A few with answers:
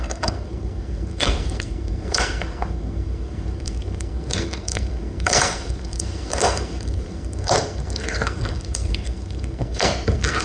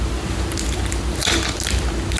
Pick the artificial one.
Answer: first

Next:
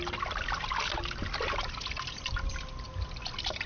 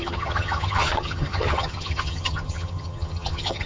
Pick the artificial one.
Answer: second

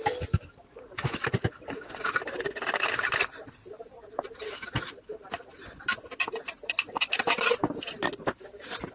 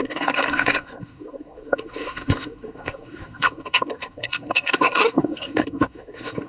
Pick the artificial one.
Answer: second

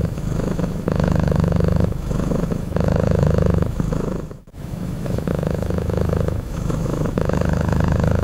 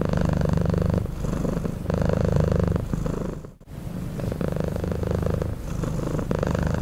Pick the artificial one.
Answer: first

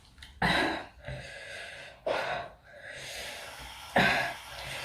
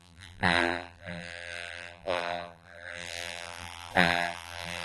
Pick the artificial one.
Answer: second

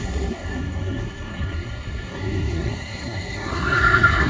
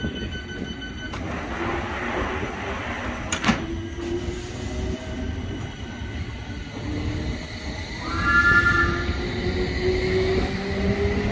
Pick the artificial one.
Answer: first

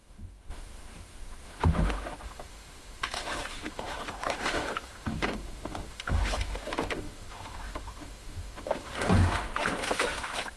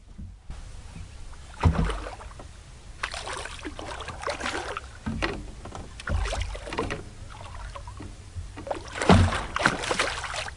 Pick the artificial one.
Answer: first